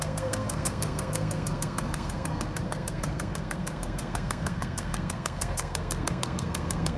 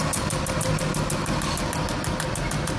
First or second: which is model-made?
first